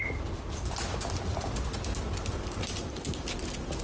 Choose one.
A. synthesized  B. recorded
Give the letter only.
B